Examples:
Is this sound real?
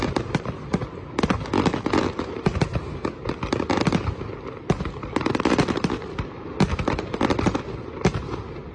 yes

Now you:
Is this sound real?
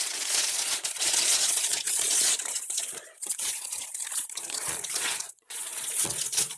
no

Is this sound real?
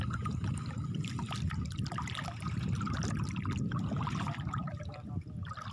yes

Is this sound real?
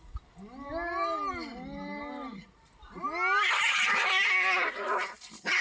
yes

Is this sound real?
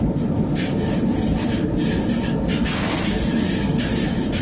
no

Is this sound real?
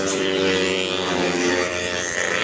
no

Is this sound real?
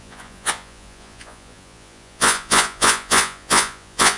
no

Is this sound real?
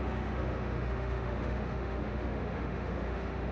no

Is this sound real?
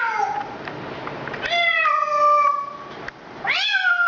yes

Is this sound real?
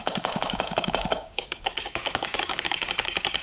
no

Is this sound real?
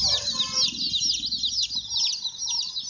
yes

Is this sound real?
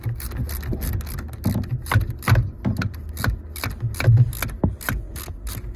yes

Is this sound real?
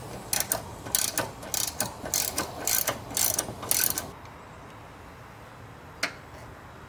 yes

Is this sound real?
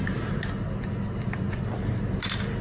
yes